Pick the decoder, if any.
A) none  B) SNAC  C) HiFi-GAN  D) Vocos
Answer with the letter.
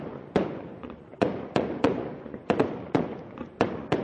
D